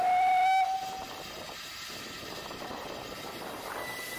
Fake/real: real